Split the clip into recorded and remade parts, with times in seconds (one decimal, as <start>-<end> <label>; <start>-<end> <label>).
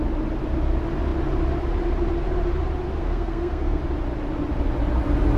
0.0-3.0 recorded; 3.0-3.8 remade; 3.8-5.4 recorded